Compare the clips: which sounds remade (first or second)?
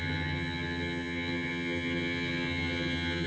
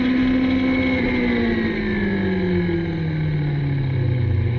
first